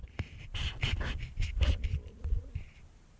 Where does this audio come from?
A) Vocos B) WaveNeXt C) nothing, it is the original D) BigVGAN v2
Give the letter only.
C